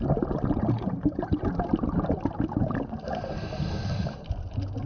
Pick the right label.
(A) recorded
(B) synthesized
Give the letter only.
A